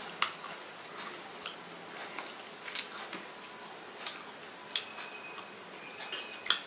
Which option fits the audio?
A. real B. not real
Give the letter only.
A